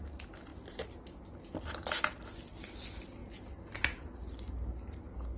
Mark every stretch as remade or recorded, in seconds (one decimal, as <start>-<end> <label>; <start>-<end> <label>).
0.0-5.4 recorded